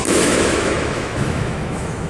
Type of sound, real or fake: fake